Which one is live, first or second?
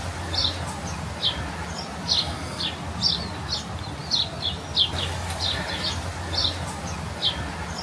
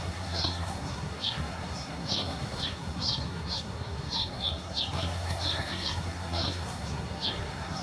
first